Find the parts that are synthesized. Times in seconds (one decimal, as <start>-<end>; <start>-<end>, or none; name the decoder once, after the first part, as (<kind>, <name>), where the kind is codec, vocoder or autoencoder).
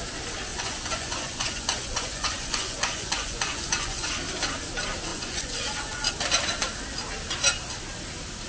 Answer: 0.5-4.1 (vocoder, Vocos); 5.1-6.1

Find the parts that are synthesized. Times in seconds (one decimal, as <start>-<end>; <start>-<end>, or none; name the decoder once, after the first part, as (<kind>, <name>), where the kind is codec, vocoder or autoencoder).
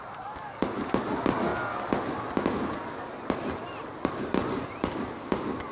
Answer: none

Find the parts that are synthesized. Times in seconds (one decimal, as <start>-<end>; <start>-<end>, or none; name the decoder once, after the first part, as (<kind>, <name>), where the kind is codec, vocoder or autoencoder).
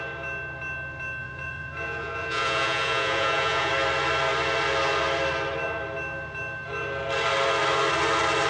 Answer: 1.2-3.7 (vocoder, Vocos)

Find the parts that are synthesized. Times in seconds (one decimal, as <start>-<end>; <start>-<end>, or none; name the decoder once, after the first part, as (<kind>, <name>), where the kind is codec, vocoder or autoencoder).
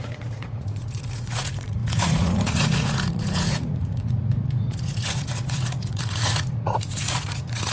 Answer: 0.0-7.7 (vocoder, Vocos)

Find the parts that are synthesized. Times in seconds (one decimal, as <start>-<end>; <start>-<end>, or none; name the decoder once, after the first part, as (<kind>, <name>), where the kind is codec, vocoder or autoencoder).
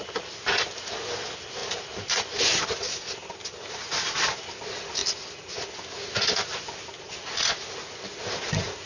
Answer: none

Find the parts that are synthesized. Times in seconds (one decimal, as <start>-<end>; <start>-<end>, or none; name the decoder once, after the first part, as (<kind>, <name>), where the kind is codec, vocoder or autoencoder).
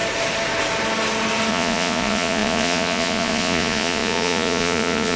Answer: 1.5-5.2 (vocoder, Vocos)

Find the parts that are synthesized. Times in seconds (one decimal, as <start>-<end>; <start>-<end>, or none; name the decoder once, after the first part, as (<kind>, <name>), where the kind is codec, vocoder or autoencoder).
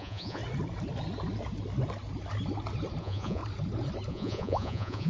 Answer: 0.0-0.4 (vocoder, Vocos); 3.0-3.4; 4.1-5.1